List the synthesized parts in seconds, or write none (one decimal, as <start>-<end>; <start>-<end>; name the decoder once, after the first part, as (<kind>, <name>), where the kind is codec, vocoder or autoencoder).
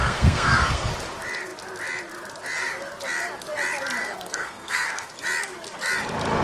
0.0-0.9 (codec, SNAC); 4.0-5.1